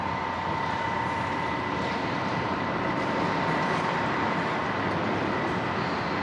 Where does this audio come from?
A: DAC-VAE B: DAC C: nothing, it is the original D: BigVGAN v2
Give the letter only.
C